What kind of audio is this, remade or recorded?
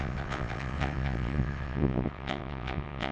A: remade